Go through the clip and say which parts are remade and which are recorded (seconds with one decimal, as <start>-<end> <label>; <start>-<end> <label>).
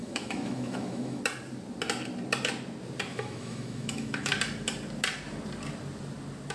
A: 0.0-1.2 remade; 1.2-3.1 recorded; 3.1-4.3 remade; 4.3-6.5 recorded